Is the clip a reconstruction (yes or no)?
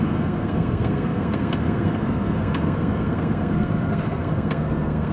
yes